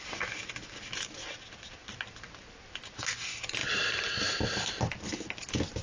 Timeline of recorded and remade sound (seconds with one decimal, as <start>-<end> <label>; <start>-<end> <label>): 0.0-5.8 recorded